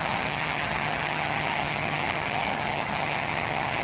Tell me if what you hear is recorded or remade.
remade